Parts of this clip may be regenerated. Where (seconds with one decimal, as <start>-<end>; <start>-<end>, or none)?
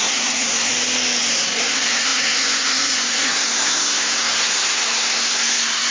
0.0-0.7; 1.2-5.9